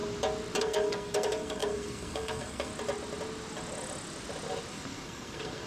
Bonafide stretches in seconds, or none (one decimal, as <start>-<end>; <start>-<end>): 0.0-0.6; 2.7-4.7